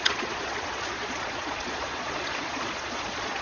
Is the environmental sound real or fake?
fake